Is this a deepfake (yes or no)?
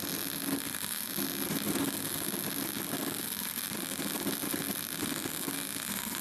no